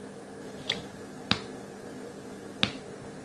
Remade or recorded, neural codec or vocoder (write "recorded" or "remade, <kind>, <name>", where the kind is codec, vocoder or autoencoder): recorded